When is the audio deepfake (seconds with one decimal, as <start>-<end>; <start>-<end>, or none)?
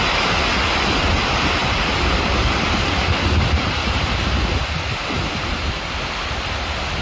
none